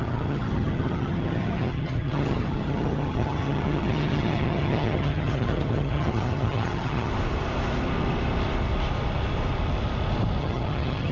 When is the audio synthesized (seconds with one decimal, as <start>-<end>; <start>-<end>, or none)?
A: 0.0-7.1; 10.4-11.1